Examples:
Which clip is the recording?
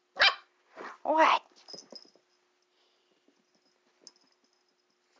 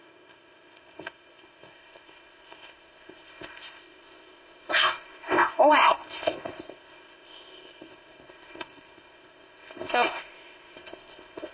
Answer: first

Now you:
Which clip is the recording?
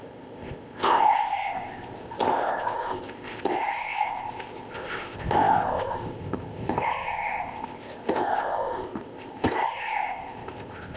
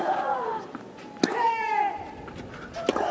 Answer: second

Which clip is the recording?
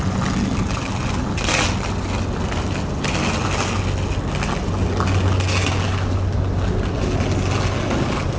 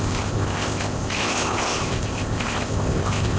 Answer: first